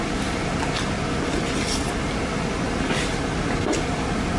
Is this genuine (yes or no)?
yes